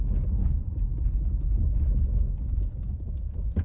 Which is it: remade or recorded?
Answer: recorded